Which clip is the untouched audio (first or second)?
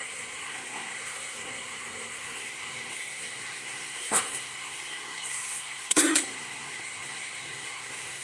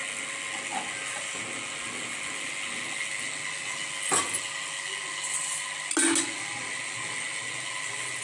second